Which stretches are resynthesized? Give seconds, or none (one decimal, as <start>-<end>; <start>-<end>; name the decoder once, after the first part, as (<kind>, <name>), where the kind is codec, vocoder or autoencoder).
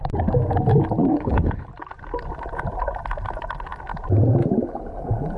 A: 1.1-1.7 (codec, HILCodec)